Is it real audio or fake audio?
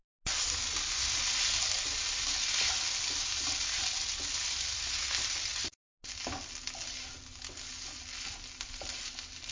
real